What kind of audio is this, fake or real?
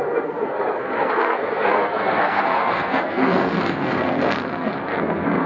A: fake